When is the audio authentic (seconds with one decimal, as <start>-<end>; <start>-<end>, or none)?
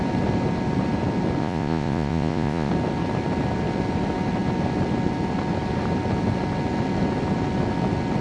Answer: 0.0-1.4; 2.7-8.2